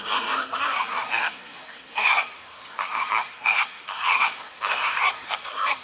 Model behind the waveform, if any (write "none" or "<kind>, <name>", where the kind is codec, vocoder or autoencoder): codec, SNAC